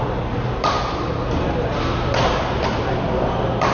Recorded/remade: recorded